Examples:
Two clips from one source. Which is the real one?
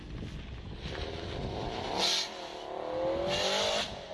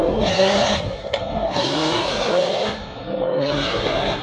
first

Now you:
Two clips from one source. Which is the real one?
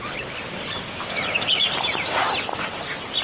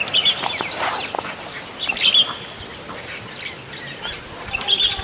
second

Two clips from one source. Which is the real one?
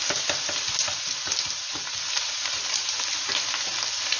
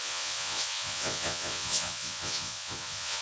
first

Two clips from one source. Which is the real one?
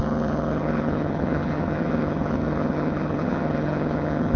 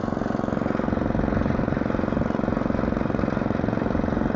second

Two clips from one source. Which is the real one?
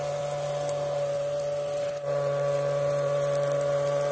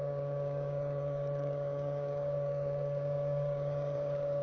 first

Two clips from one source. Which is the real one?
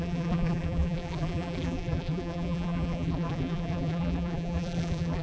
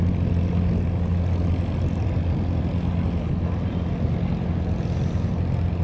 second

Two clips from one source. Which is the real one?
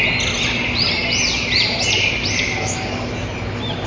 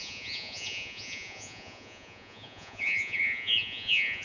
first